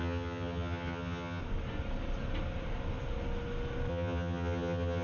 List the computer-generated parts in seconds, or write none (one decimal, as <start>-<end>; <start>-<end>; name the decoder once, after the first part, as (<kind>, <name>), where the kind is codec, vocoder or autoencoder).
0.0-1.4 (vocoder, HiFi-GAN); 3.9-5.0